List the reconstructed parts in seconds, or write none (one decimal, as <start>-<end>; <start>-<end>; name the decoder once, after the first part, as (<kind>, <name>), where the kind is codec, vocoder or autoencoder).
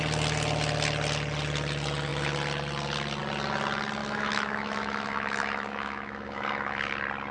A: 4.0-6.8 (autoencoder, DAC-VAE)